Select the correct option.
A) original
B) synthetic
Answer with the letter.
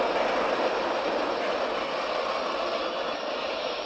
A